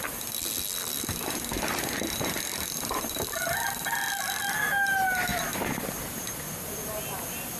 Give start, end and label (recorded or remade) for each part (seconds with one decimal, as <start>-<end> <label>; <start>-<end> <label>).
0.0-7.6 recorded